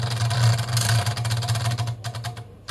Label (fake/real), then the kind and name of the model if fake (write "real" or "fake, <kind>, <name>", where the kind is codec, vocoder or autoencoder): real